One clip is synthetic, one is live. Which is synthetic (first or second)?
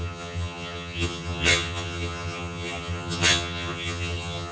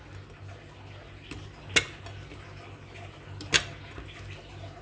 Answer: first